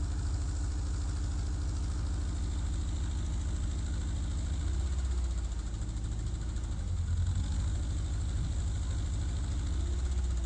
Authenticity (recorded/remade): recorded